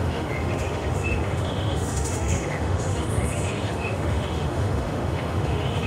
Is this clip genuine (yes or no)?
no